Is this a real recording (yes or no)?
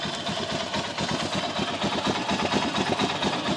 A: yes